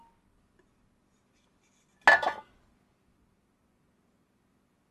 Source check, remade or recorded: recorded